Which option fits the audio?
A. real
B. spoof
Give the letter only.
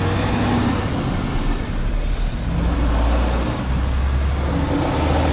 A